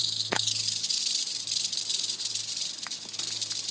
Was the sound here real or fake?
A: real